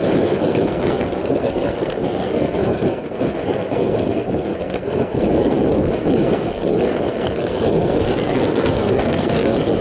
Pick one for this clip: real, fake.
fake